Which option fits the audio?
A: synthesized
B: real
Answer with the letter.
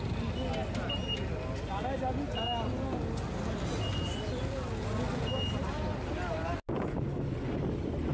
B